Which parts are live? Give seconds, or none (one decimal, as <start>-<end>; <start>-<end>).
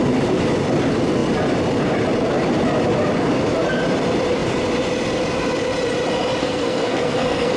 0.0-6.4